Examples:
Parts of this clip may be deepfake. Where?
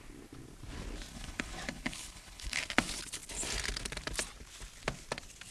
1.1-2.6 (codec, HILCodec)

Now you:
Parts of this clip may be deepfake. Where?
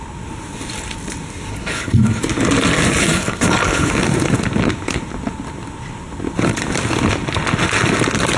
1.5-2.2 (codec, HILCodec); 3.0-3.9